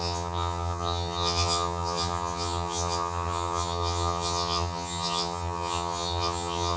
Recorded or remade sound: remade